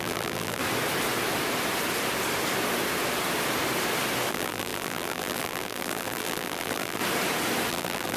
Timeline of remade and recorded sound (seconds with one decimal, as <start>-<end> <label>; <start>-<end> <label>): 0.0-0.6 remade; 0.6-4.3 recorded; 4.3-7.0 remade; 7.0-7.7 recorded; 7.7-8.2 remade